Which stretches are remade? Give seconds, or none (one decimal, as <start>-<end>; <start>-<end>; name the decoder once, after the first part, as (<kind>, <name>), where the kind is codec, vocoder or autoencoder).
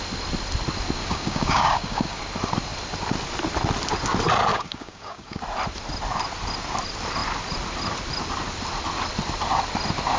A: 1.0-2.2 (codec, DAC); 4.5-5.4